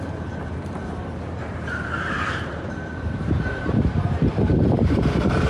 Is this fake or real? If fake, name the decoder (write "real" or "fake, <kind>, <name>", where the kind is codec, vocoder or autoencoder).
fake, vocoder, BigVGAN v2